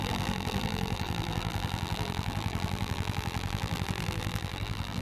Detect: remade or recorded remade